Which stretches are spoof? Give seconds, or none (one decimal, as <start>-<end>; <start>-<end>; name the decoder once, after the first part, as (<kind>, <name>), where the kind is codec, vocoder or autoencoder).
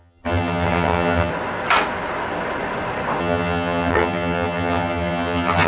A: 0.0-1.3 (vocoder, HiFi-GAN); 3.2-5.7